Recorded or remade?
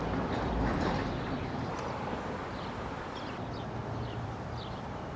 remade